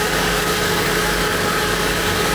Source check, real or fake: fake